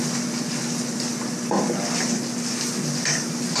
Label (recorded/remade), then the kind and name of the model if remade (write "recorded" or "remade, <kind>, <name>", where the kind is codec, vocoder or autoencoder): recorded